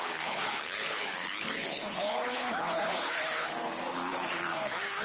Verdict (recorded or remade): remade